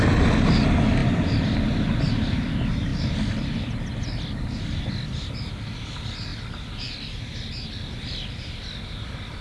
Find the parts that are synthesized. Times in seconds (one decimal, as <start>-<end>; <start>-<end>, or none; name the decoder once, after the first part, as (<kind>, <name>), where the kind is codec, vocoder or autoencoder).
none